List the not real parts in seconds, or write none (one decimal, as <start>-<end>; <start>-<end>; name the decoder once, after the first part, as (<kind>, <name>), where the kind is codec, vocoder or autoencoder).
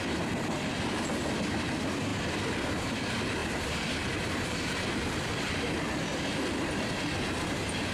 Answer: 0.0-7.9 (vocoder, BigVGAN v2)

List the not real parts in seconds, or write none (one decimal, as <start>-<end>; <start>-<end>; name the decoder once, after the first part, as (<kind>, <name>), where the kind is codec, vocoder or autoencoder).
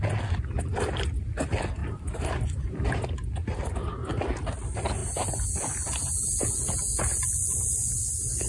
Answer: 1.8-2.9 (vocoder, BigVGAN v2)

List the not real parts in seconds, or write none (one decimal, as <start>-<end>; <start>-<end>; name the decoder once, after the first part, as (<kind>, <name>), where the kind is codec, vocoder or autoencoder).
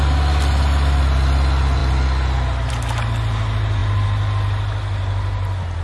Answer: none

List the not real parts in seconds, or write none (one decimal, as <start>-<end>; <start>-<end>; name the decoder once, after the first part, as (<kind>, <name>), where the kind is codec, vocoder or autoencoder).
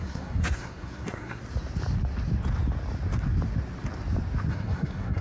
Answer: 0.0-1.4 (codec, SNAC); 4.5-5.2